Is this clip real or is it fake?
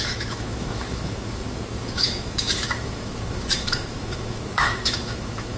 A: fake